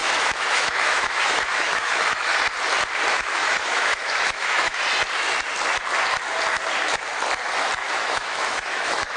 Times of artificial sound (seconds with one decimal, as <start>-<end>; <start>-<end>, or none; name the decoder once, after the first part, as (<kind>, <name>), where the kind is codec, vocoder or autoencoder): 0.0-2.4 (autoencoder, DAC-VAE); 3.1-4.8; 7.8-9.2